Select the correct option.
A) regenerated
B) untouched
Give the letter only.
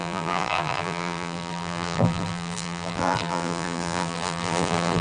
A